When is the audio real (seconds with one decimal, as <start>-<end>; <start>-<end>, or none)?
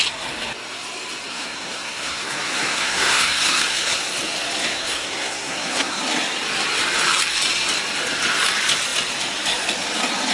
0.0-1.3; 4.0-4.7; 6.0-10.3